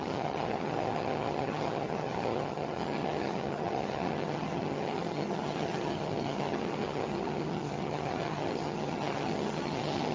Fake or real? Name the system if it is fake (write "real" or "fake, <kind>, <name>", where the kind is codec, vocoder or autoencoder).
fake, vocoder, HiFi-GAN